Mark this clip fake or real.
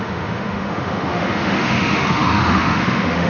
fake